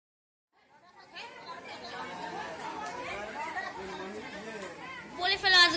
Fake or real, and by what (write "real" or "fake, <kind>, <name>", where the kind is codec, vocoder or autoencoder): real